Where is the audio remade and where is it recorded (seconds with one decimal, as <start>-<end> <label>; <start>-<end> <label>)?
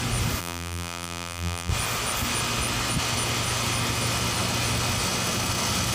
0.0-0.4 recorded; 0.4-1.7 remade; 1.7-5.9 recorded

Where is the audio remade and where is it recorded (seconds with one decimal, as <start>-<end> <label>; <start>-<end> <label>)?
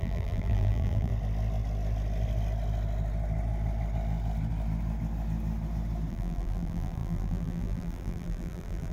0.0-1.1 remade; 1.1-6.1 recorded; 6.1-8.9 remade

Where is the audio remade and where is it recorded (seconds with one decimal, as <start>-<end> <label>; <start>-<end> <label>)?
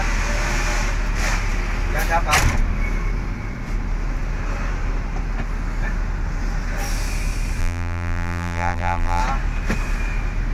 0.0-7.6 recorded; 7.6-9.2 remade; 9.2-10.5 recorded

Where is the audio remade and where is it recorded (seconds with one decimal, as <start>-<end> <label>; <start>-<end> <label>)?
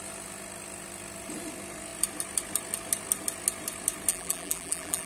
0.0-4.1 recorded; 4.1-5.1 remade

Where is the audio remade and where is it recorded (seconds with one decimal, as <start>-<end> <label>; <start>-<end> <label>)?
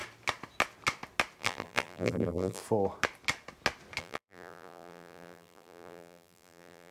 0.0-1.4 recorded; 1.4-2.6 remade; 2.6-4.0 recorded; 4.0-6.9 remade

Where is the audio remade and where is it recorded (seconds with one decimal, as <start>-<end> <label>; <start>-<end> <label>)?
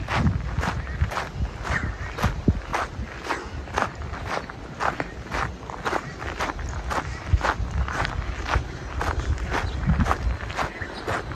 0.0-11.3 recorded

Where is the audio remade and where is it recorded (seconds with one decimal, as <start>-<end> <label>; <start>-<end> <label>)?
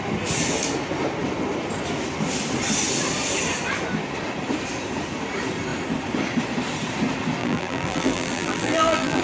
0.0-7.4 recorded; 7.4-9.2 remade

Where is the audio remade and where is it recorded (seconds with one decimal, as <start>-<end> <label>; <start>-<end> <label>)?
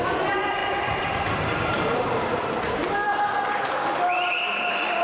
0.0-5.0 remade